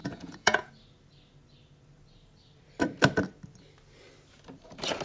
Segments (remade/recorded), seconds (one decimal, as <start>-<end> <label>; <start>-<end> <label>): 0.0-0.7 remade; 0.7-5.0 recorded

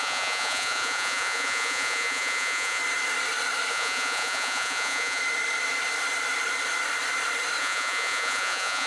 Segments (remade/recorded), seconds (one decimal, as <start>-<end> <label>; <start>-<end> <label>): 0.0-2.8 remade; 2.8-3.7 recorded; 3.7-5.2 remade; 5.2-7.6 recorded; 7.6-8.9 remade

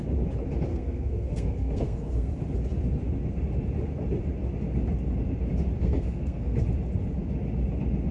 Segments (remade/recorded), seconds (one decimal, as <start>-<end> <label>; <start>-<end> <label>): 0.0-0.7 recorded; 0.7-2.3 remade; 2.3-5.8 recorded; 5.8-6.6 remade; 6.6-8.1 recorded

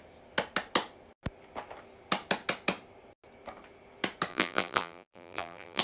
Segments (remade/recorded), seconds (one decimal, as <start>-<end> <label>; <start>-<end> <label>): 0.0-4.3 recorded; 4.3-5.8 remade

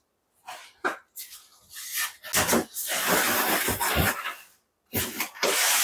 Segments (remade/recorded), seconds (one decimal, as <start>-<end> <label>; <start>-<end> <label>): 0.0-0.4 recorded; 0.4-1.0 remade; 1.0-5.8 recorded